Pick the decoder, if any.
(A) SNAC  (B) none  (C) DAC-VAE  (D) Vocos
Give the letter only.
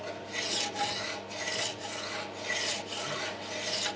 B